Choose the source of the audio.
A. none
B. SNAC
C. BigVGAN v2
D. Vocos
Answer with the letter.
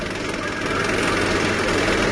A